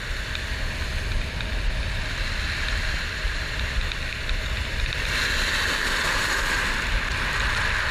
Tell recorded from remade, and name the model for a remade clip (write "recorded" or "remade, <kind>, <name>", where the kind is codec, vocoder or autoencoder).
recorded